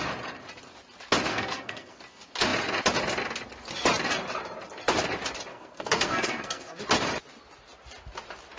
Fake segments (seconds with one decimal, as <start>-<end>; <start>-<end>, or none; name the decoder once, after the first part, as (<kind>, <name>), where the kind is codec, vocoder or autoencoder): 1.3-2.0 (codec, SNAC); 5.5-6.8